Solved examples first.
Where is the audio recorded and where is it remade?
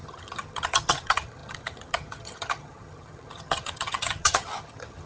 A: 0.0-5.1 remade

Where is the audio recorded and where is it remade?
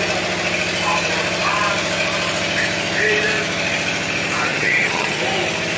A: 0.0-4.5 recorded; 4.5-5.2 remade; 5.2-5.8 recorded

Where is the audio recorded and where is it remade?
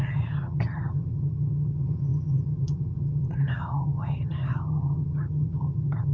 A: 0.0-6.1 remade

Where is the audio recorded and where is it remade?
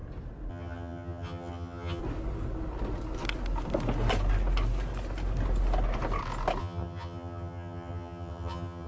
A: 0.0-0.5 recorded; 0.5-2.0 remade; 2.0-6.6 recorded; 6.6-8.9 remade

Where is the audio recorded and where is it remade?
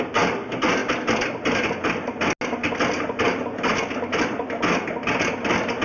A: 0.0-5.8 recorded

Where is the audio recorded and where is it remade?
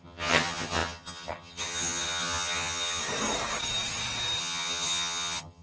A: 0.0-3.0 remade; 3.0-4.4 recorded; 4.4-5.6 remade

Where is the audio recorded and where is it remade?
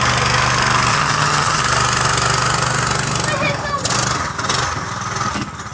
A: 0.0-0.9 recorded; 0.9-1.6 remade; 1.6-5.7 recorded